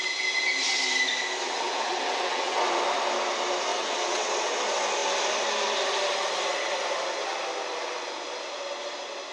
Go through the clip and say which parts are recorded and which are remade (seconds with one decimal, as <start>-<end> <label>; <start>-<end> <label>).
0.0-1.4 recorded; 1.4-2.8 remade; 2.8-3.7 recorded; 3.7-4.5 remade; 4.5-9.3 recorded